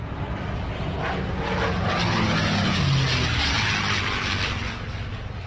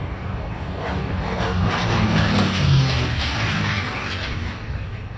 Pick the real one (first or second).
first